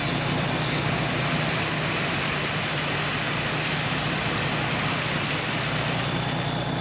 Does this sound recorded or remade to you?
recorded